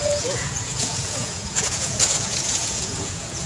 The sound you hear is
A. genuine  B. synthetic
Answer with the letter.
B